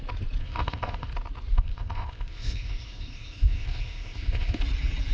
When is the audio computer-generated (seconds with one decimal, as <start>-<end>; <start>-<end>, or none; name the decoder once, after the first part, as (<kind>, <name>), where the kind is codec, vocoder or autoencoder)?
0.4-1.1 (codec, ZipCodec); 1.5-4.6